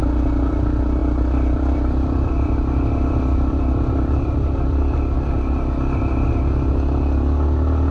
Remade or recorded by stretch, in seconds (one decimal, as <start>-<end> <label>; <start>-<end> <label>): 0.0-1.0 recorded; 1.0-4.8 remade; 4.8-7.9 recorded